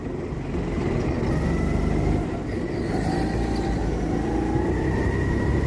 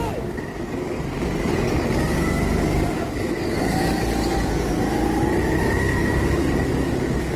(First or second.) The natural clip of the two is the first